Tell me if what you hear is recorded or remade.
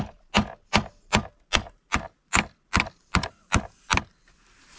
recorded